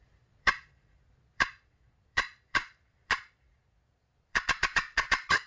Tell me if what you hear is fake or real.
fake